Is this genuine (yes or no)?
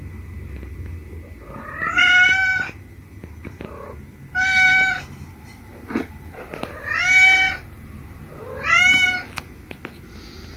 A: yes